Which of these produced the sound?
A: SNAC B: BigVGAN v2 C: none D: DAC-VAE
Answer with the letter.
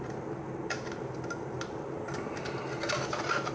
C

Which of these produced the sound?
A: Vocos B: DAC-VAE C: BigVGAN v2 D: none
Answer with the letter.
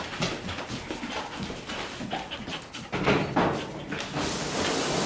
D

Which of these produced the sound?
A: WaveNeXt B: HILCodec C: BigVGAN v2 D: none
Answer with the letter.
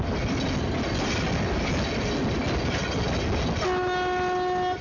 D